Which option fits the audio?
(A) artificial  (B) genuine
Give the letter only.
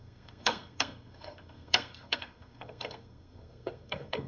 A